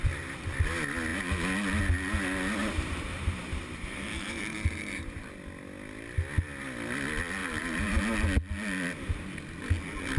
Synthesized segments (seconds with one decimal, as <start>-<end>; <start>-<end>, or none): 2.6-5.2; 7.4-8.0